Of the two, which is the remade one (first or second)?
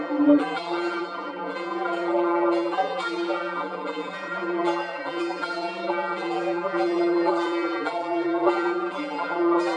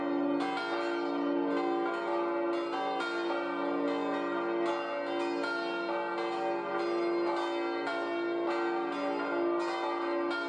first